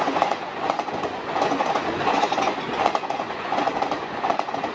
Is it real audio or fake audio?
fake